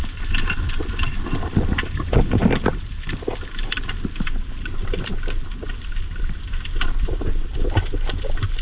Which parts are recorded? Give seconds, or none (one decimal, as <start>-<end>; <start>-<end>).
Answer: 0.0-2.4; 3.0-7.5; 8.1-8.6